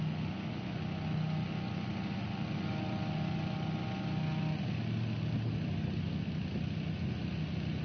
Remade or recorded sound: recorded